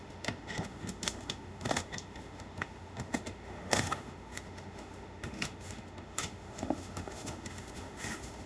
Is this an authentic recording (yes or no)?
no